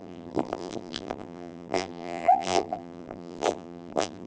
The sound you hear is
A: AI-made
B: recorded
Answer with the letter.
A